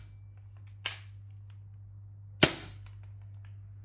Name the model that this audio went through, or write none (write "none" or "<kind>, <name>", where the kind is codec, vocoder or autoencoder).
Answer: none